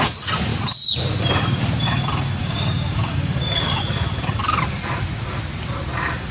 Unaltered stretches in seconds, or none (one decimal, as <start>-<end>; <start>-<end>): 0.0-2.4; 3.8-6.3